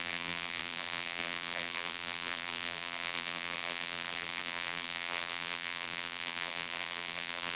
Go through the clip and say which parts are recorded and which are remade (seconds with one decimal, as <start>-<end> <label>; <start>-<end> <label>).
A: 0.0-7.6 remade